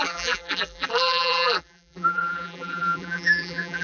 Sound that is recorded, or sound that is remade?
remade